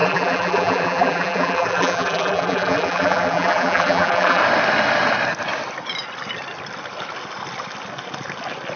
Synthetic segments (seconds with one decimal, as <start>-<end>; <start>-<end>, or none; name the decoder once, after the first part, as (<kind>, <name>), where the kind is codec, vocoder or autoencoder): 0.0-4.4 (vocoder, BigVGAN v2)